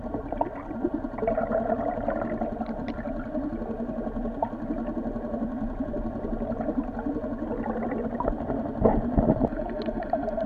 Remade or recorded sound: recorded